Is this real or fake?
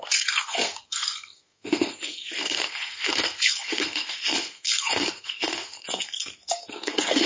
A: fake